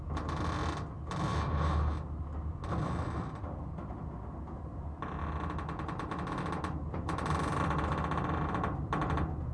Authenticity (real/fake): real